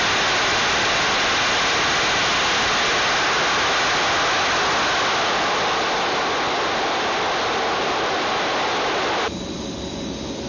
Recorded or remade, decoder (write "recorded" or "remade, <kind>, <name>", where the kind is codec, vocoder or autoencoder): recorded